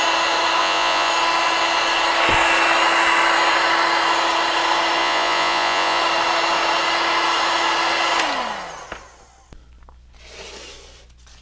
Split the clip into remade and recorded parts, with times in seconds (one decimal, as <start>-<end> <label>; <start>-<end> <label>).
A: 0.0-0.6 recorded; 0.6-1.1 remade; 1.1-5.0 recorded; 5.0-6.0 remade; 6.0-11.4 recorded